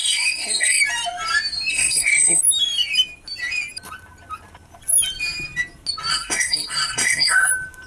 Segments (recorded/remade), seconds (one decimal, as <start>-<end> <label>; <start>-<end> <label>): 0.0-0.8 remade; 0.8-1.7 recorded; 1.7-2.4 remade; 2.4-6.1 recorded; 6.1-7.5 remade; 7.5-7.9 recorded